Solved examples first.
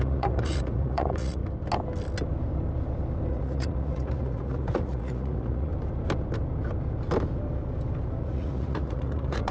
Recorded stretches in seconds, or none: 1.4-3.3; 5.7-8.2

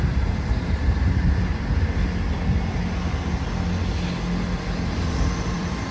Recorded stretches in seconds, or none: 1.5-5.0

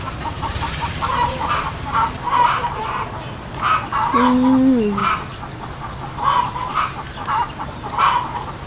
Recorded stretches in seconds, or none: 0.0-0.5; 2.8-7.2; 7.9-8.7

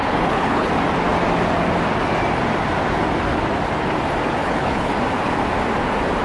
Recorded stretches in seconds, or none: 0.7-4.4; 4.9-6.2